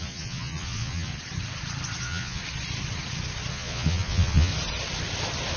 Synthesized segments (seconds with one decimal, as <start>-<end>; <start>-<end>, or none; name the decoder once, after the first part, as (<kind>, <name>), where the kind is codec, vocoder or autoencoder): 0.0-1.1 (vocoder, Vocos); 2.0-2.4; 3.5-4.5